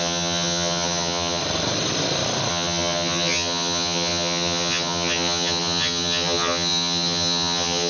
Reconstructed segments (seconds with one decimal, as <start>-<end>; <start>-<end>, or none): 0.0-1.4; 2.5-7.9